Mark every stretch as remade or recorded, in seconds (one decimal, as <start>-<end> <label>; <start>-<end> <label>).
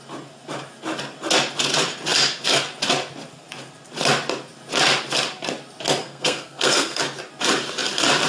0.0-6.0 recorded; 6.0-7.0 remade; 7.0-8.3 recorded